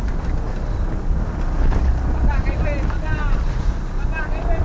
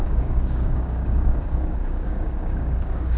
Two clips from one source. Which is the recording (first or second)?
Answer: first